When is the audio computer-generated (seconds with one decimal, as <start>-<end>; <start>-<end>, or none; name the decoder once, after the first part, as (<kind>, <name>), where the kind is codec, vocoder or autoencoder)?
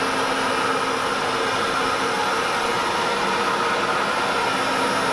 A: none